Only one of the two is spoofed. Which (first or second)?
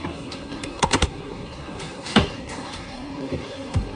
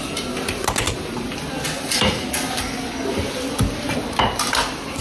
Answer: first